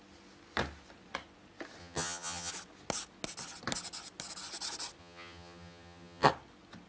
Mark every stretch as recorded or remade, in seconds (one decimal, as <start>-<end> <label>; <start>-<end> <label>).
0.0-1.8 recorded; 1.8-2.5 remade; 2.5-5.0 recorded; 5.0-6.3 remade; 6.3-6.9 recorded